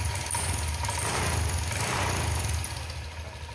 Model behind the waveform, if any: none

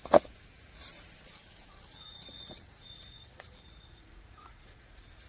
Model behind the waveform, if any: vocoder, Vocos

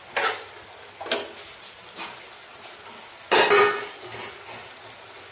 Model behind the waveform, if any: none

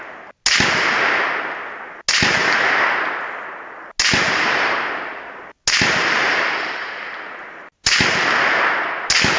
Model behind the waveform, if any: none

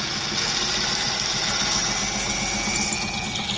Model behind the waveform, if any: none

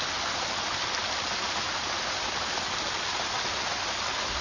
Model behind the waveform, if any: none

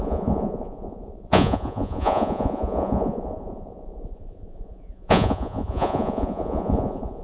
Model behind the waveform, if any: vocoder, Vocos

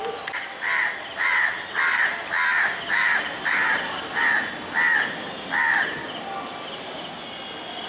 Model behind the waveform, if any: none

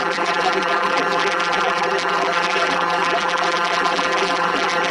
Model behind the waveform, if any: vocoder, BigVGAN v2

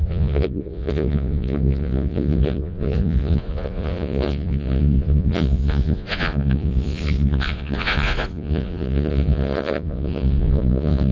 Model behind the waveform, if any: vocoder, Vocos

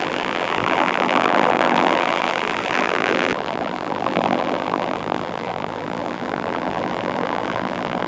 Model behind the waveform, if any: vocoder, BigVGAN v2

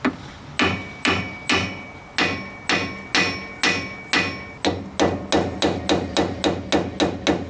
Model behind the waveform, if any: none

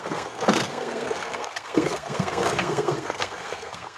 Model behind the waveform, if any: codec, SNAC